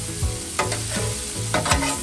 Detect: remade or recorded recorded